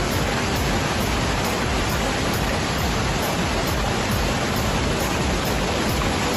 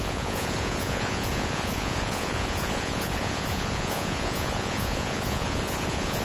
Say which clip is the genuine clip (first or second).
first